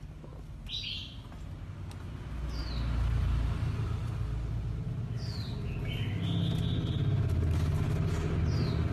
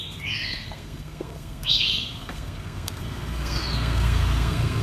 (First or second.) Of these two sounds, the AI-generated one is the second